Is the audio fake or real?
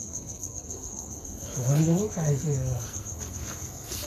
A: fake